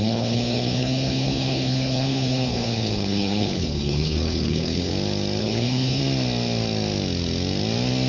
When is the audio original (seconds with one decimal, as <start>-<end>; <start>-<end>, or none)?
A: 4.9-5.4; 6.0-8.1